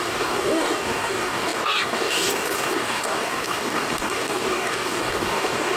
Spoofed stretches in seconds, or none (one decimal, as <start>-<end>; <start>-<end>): 0.0-5.8